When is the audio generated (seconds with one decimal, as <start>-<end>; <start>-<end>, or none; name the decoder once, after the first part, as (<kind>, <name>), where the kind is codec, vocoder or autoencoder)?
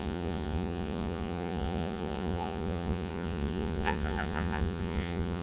0.0-5.4 (vocoder, Vocos)